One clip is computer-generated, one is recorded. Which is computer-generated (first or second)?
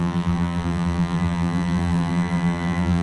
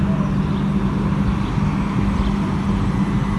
first